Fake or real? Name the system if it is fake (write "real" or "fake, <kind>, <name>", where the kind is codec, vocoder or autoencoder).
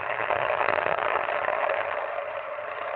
fake, vocoder, HiFi-GAN